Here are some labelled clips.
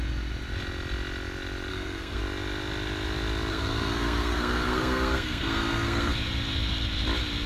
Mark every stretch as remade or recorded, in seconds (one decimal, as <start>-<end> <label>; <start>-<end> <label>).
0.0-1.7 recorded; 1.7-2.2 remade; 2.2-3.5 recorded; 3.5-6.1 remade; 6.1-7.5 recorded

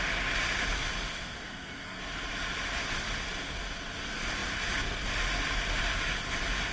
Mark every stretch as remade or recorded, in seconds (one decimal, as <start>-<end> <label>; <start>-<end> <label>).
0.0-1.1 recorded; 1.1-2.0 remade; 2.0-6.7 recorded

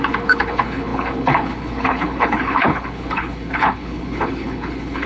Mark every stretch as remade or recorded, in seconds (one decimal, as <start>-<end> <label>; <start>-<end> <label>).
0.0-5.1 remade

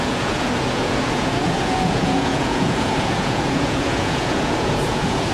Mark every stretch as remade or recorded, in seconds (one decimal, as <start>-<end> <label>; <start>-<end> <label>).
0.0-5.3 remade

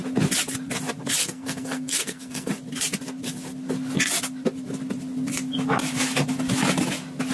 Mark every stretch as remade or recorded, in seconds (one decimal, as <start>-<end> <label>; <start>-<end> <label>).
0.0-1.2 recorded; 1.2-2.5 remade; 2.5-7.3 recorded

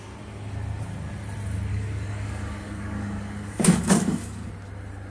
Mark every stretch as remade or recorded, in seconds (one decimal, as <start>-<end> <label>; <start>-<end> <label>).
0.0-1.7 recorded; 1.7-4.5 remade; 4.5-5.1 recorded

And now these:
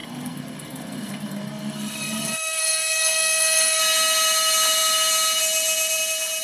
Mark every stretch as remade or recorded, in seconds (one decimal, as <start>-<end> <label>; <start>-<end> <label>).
0.0-3.8 remade; 3.8-6.4 recorded

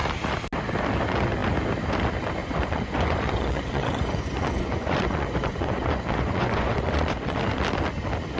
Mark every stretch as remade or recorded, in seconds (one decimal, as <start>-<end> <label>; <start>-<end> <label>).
0.0-2.4 recorded; 2.4-7.4 remade; 7.4-8.4 recorded